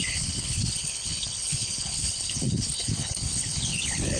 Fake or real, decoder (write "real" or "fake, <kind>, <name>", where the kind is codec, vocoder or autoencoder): fake, codec, HILCodec